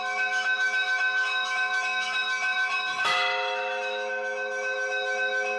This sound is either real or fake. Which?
fake